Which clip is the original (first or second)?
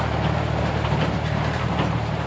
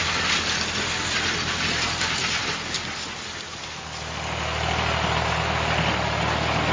second